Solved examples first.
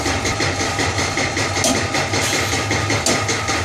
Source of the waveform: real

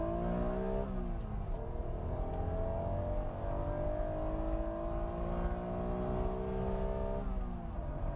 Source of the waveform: real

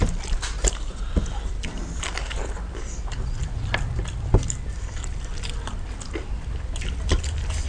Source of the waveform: fake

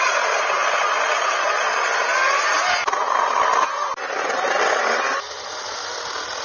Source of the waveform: real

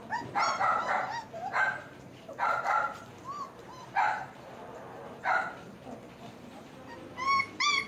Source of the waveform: fake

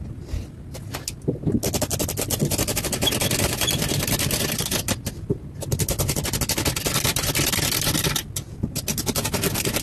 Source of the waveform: real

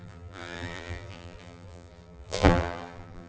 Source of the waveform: fake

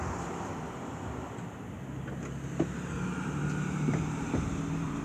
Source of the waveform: fake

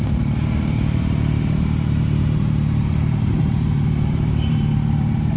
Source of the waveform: fake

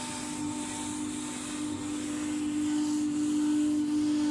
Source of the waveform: real